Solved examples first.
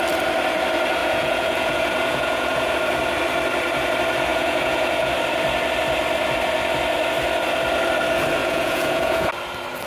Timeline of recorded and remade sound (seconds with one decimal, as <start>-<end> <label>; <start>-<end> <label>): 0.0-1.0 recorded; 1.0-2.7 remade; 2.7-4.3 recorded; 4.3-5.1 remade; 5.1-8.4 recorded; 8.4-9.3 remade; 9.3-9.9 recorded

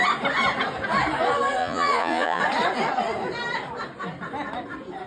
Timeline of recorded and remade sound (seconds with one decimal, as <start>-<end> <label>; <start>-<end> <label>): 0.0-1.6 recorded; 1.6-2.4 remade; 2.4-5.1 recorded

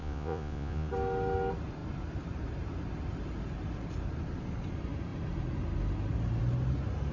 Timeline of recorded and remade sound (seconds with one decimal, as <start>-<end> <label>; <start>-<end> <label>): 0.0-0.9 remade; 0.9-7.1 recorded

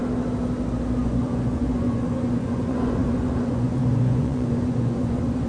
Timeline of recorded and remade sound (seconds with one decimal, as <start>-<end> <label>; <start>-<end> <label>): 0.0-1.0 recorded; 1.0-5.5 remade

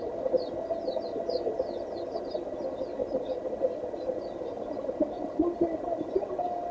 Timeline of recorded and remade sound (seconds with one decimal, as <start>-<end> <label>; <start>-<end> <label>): 0.0-6.7 recorded